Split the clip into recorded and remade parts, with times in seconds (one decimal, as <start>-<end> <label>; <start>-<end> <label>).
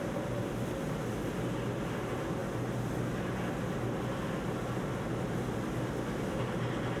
0.0-7.0 recorded